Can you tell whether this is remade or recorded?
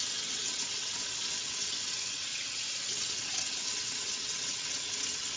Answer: remade